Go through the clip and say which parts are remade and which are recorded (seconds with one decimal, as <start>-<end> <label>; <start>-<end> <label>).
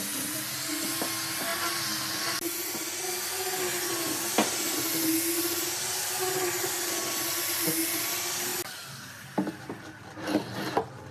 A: 0.0-11.1 recorded